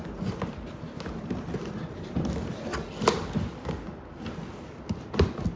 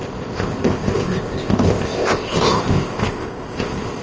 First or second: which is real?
first